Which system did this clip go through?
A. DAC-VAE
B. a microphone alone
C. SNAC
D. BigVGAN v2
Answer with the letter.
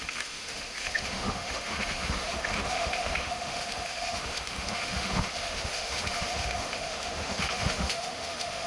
A